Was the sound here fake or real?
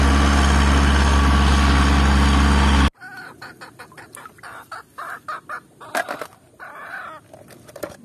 real